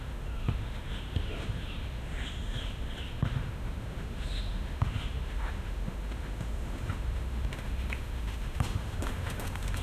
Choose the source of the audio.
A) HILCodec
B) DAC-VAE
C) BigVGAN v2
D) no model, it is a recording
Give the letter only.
B